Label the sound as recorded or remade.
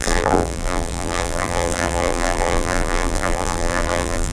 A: remade